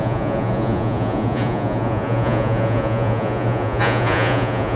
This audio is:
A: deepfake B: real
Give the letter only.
A